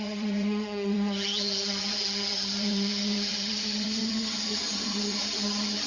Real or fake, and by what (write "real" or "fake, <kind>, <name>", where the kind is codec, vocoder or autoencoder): fake, vocoder, HiFi-GAN